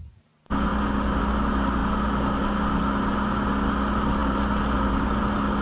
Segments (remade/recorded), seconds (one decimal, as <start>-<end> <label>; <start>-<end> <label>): 0.0-5.6 recorded